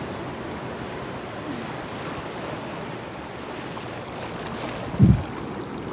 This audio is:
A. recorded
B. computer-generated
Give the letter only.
A